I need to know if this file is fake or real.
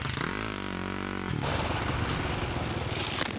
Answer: real